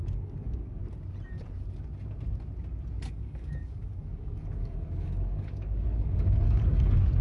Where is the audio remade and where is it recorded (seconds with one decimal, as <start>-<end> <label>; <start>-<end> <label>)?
0.0-0.8 remade; 0.8-3.1 recorded; 3.1-7.2 remade